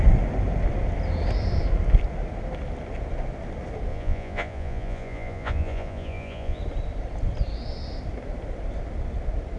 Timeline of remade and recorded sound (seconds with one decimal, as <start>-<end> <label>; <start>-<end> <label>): 0.0-3.9 recorded; 3.9-6.6 remade; 6.6-9.6 recorded